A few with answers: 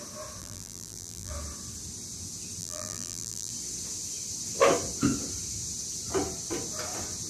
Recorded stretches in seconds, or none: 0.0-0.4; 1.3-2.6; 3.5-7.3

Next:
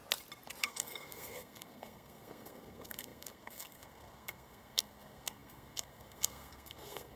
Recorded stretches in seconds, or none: 0.0-0.6